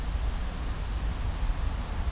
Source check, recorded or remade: recorded